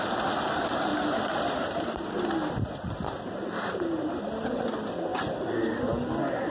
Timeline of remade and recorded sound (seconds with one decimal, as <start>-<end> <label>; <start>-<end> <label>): 0.0-6.5 recorded